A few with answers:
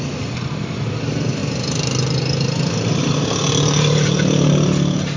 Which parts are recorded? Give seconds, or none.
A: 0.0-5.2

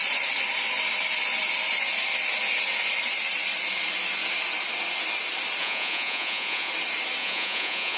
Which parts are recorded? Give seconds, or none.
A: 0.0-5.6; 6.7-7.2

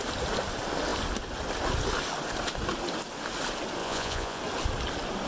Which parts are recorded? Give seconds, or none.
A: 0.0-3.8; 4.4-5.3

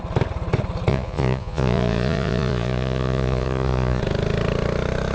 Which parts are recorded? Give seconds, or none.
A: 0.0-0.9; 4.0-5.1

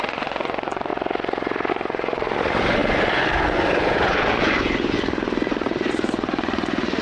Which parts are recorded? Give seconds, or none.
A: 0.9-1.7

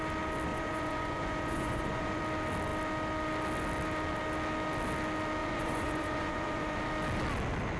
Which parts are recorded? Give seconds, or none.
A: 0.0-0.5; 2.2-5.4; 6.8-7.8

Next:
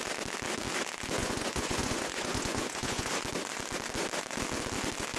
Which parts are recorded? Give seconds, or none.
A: 0.0-1.2; 3.1-5.2